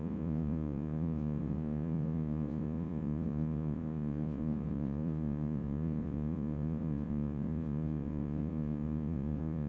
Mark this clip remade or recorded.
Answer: remade